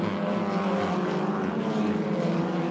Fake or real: real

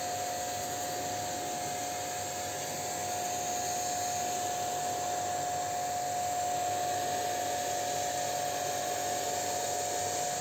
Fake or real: real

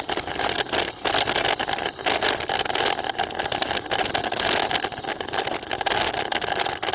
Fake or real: real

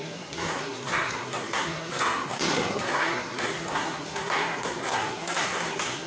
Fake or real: fake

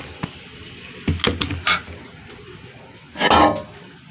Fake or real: real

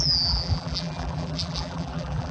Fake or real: fake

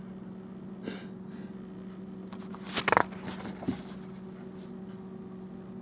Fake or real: real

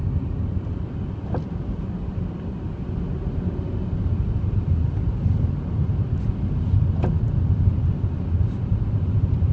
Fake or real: real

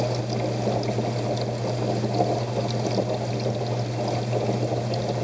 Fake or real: real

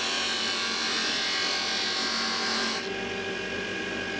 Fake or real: real